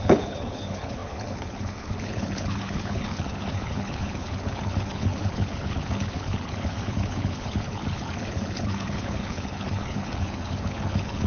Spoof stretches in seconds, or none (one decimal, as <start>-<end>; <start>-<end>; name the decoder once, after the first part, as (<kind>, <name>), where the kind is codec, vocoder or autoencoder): 0.0-11.3 (codec, HILCodec)